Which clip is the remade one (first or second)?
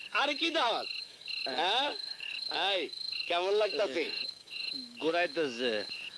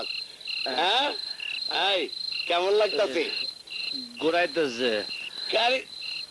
first